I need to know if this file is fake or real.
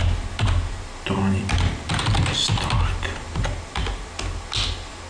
real